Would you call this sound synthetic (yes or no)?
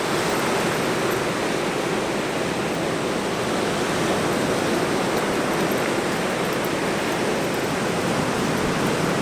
no